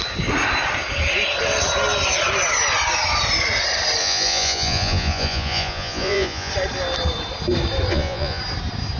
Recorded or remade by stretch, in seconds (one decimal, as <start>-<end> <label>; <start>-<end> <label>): 0.0-4.0 recorded; 4.0-6.5 remade; 6.5-7.9 recorded; 7.9-8.4 remade; 8.4-9.0 recorded